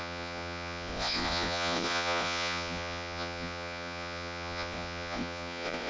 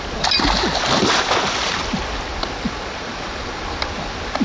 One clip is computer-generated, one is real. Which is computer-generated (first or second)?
first